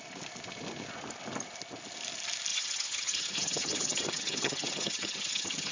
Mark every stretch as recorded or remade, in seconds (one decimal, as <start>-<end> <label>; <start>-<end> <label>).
0.0-2.5 recorded; 2.5-5.7 remade